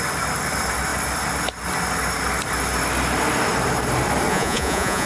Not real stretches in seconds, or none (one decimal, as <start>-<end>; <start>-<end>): 4.3-5.1